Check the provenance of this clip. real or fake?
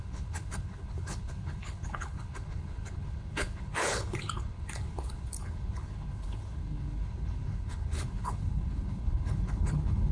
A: fake